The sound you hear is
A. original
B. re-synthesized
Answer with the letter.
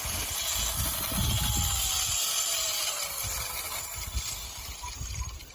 A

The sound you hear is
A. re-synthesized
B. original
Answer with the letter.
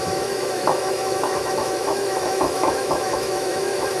A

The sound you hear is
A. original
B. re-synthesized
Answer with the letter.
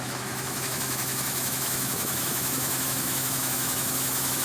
B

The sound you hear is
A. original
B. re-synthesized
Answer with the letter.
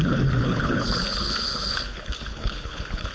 B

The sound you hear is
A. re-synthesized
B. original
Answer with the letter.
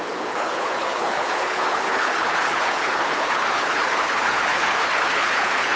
A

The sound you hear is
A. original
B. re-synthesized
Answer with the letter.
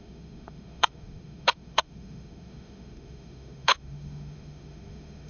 B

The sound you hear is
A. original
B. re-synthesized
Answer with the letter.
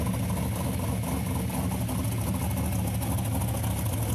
A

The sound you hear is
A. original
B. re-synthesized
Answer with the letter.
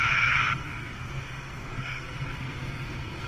B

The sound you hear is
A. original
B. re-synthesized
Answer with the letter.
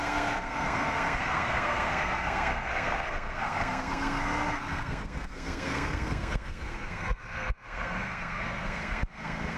B